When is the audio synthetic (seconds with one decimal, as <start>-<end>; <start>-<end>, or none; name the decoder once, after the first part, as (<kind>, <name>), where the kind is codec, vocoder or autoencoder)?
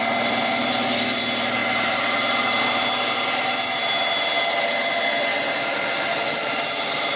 none